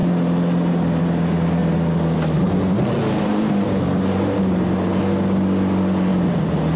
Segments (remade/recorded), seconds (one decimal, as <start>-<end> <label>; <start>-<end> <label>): 0.0-3.3 recorded; 3.3-5.0 remade; 5.0-6.1 recorded; 6.1-6.8 remade